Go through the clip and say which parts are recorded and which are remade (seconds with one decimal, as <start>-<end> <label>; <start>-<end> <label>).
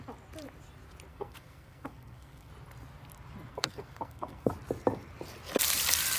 0.0-1.1 recorded; 1.1-2.5 remade; 2.5-3.5 recorded; 3.5-4.5 remade; 4.5-6.2 recorded